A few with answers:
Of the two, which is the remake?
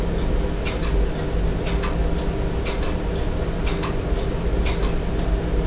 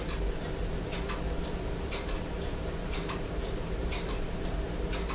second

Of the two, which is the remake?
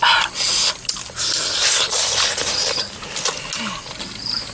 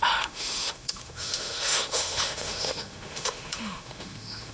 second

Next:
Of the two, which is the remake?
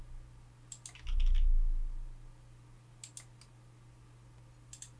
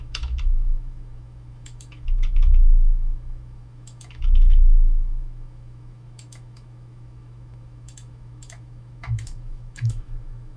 second